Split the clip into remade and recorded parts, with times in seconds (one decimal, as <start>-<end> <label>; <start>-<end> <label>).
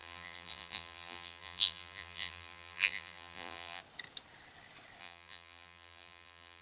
0.0-3.8 remade; 3.8-5.0 recorded; 5.0-6.6 remade